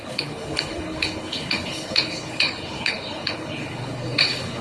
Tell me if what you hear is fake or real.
fake